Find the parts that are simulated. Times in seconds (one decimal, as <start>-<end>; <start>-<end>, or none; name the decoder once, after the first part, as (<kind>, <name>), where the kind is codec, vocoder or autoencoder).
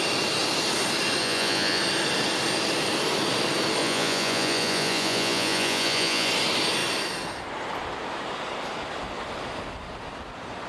1.2-1.8 (vocoder, Vocos); 3.8-6.3